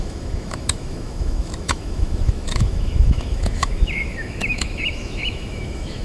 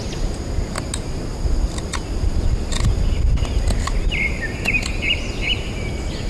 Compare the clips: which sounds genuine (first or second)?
second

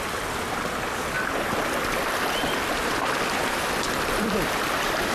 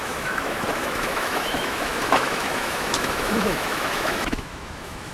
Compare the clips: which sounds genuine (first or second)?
first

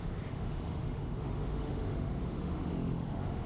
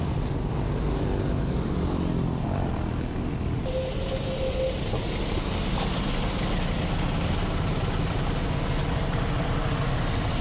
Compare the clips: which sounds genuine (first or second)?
second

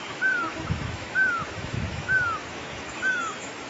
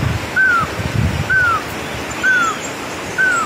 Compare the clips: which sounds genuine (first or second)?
second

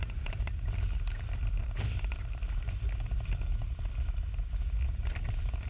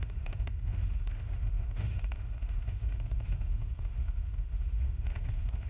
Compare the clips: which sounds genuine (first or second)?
first